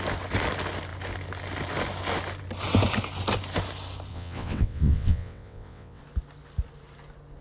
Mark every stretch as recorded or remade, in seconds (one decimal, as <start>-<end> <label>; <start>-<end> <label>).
0.0-4.1 recorded; 4.1-6.0 remade; 6.0-7.4 recorded